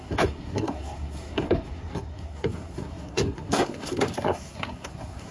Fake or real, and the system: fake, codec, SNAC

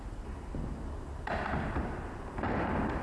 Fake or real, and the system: fake, vocoder, BigVGAN v2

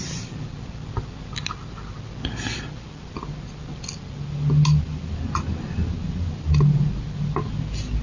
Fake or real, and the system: real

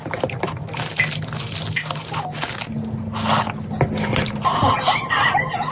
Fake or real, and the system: real